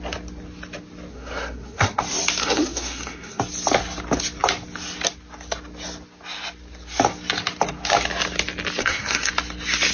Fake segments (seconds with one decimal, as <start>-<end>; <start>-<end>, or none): 1.1-2.0; 2.4-3.4; 8.8-9.3